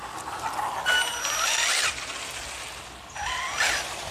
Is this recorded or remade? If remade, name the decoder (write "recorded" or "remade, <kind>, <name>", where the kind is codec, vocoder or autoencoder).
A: recorded